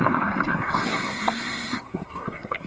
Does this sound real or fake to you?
fake